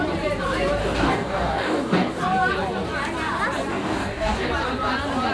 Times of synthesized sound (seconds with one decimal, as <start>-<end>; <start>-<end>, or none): 0.8-2.2; 3.7-4.5